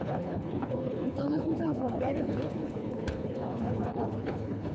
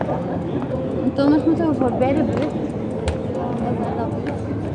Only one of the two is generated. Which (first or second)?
first